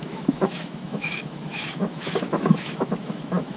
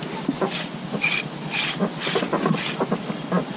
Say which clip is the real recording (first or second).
second